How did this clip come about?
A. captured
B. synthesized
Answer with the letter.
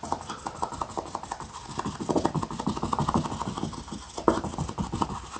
A